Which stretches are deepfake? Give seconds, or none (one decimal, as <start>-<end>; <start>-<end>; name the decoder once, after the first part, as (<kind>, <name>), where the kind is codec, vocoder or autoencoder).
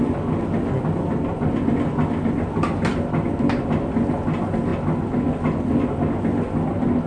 none